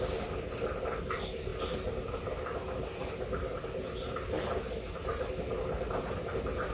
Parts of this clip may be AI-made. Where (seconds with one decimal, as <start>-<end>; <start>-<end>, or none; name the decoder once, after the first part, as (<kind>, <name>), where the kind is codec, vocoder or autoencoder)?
none